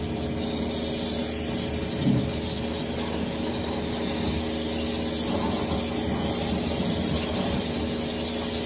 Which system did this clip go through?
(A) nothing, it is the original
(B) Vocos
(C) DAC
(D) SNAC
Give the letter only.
A